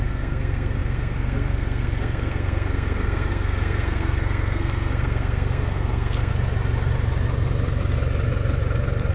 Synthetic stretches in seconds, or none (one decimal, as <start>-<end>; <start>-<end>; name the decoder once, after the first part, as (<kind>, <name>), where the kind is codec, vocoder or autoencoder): 0.0-6.3 (codec, SNAC)